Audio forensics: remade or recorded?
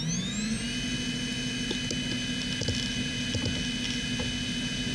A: recorded